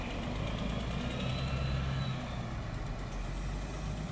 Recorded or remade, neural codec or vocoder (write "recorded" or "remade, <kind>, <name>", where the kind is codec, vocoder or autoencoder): recorded